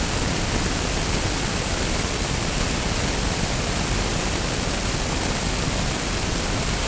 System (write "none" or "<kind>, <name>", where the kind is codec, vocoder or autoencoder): none